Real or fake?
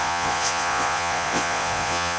fake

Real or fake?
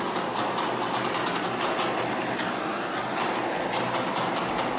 real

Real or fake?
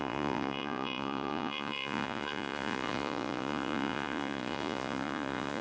fake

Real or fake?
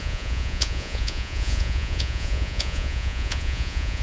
fake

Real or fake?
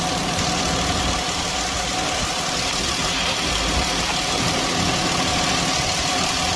real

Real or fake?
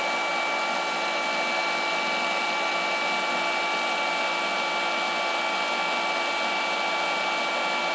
real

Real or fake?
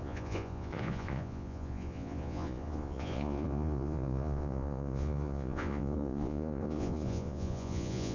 fake